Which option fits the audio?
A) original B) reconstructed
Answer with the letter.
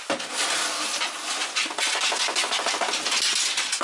A